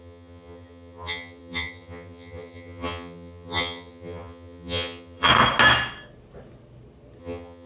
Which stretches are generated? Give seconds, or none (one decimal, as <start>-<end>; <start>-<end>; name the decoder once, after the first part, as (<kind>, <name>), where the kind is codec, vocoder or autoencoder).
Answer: 0.0-5.3 (vocoder, HiFi-GAN); 7.2-7.7